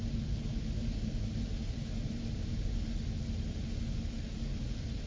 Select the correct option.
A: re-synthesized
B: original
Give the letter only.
B